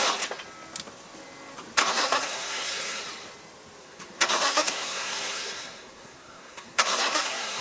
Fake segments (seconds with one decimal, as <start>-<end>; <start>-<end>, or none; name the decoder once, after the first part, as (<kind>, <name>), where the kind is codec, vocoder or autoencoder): 1.9-3.0 (codec, SNAC); 3.8-7.6